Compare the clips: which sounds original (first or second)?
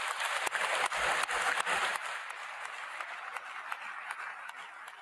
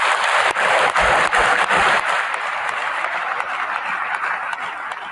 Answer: first